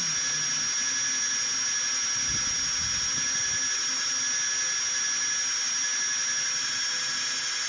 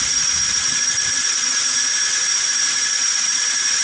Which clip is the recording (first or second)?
first